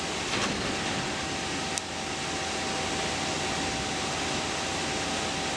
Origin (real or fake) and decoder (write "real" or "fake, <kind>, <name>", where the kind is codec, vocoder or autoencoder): real